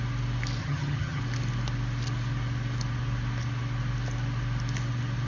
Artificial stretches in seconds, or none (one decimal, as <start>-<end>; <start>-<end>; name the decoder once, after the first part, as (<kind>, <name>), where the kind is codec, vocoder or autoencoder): 0.6-1.2 (vocoder, HiFi-GAN)